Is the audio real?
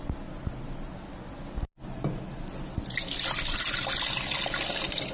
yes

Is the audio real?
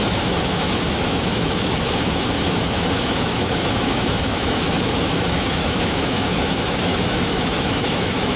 no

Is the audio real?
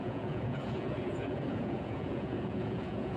no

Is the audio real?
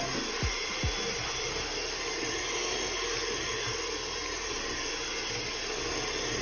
yes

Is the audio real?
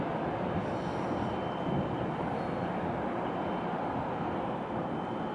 yes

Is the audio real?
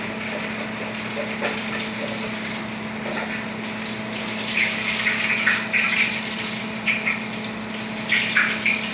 no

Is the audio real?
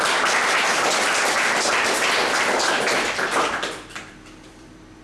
no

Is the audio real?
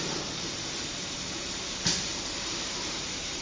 no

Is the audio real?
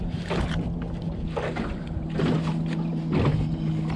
yes